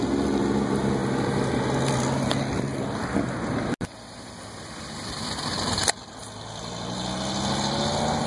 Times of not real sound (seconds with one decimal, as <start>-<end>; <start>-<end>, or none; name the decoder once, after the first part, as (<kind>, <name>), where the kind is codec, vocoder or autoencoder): none

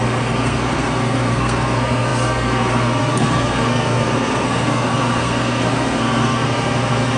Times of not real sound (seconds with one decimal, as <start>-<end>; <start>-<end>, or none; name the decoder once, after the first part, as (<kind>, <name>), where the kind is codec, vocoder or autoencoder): 0.0-7.2 (codec, SNAC)

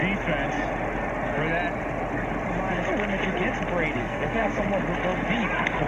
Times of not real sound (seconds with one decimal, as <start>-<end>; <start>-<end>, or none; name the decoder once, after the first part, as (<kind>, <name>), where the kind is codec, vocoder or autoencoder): 4.0-4.6 (codec, SNAC)

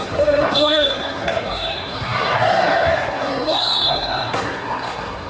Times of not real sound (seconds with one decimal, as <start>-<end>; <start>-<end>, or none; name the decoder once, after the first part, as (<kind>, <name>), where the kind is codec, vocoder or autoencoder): 0.0-5.3 (codec, SNAC)